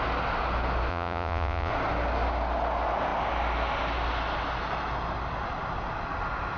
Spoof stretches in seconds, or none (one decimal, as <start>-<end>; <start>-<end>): 0.9-1.7